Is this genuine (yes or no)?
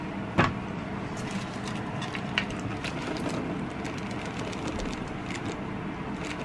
yes